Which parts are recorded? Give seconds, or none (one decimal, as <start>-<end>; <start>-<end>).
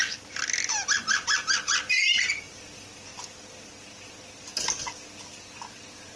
0.0-6.2